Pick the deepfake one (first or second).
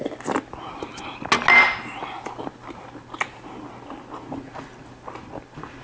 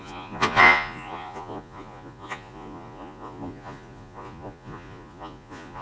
second